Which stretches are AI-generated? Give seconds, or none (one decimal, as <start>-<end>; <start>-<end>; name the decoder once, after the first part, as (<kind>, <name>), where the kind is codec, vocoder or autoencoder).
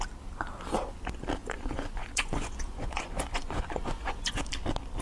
1.4-4.4 (vocoder, Vocos)